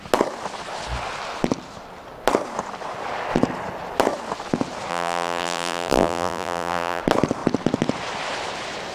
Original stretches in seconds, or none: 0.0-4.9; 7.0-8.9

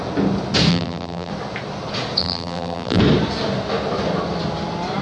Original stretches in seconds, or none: 0.0-0.7; 1.3-2.2; 3.0-5.0

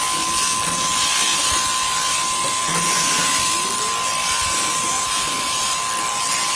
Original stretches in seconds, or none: 0.0-2.7; 3.7-4.9; 5.7-6.6